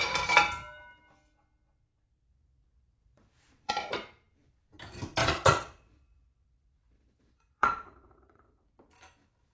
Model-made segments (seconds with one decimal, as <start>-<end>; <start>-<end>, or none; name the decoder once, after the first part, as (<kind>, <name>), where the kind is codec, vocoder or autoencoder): 2.3-3.7 (vocoder, Vocos); 5.2-8.6

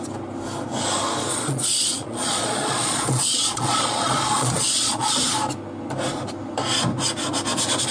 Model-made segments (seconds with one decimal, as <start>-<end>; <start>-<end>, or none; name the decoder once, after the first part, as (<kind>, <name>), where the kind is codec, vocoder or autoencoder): 1.3-5.3 (vocoder, Vocos)

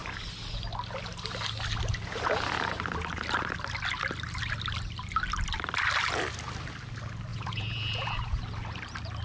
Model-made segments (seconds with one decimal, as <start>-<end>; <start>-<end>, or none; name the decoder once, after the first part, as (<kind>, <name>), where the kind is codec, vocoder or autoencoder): 7.3-8.4 (vocoder, Vocos)

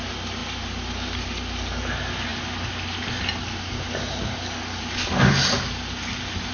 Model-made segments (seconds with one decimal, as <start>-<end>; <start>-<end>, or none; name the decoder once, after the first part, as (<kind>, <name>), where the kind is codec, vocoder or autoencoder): none